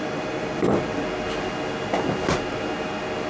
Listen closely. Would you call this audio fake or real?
real